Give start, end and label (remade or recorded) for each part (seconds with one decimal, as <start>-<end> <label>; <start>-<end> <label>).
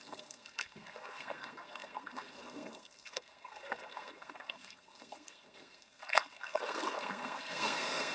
0.0-8.1 remade